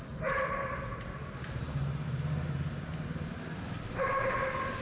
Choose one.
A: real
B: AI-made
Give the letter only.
A